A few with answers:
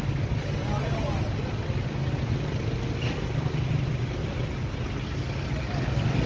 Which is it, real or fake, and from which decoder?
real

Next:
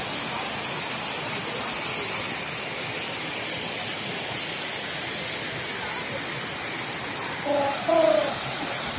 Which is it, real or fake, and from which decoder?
real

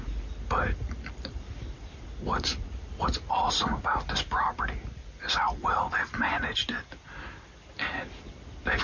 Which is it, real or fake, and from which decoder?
real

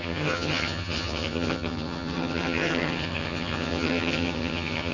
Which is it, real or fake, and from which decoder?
fake, vocoder, HiFi-GAN